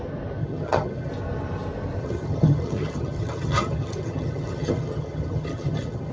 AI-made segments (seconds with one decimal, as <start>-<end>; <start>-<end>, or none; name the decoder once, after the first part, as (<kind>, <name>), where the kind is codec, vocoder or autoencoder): 0.4-1.1 (vocoder, HiFi-GAN); 2.0-6.1